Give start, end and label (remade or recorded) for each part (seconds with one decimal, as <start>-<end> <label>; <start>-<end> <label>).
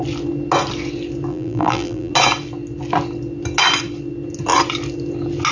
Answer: 0.0-1.3 recorded; 1.3-2.1 remade; 2.1-5.5 recorded